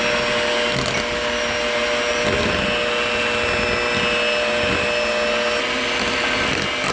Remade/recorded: recorded